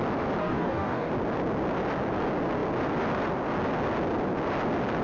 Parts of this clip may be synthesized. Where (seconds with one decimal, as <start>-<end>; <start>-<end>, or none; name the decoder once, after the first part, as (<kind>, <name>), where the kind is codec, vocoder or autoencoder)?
0.4-1.1 (codec, DAC)